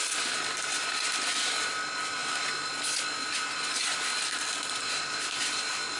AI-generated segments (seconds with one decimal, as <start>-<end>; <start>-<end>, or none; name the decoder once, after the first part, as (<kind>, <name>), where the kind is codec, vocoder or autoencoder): none